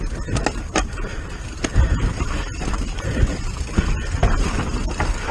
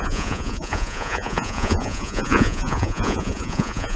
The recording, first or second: first